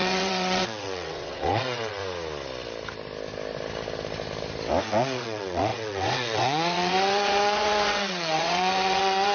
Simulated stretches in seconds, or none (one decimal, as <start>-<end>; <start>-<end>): 0.0-2.0; 4.8-9.3